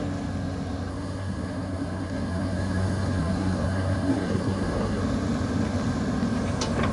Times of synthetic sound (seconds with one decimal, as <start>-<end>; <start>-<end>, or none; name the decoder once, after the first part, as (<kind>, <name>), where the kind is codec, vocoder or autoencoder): 0.9-5.0 (codec, SNAC)